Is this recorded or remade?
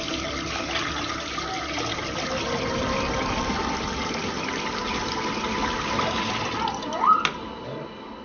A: recorded